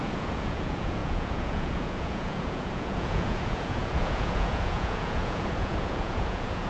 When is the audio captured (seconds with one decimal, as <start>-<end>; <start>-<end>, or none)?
none